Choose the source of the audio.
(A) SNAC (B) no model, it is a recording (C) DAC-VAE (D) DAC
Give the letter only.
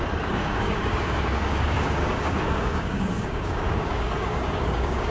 D